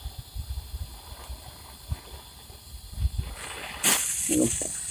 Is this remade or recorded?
recorded